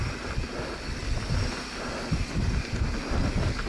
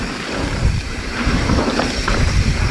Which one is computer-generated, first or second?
second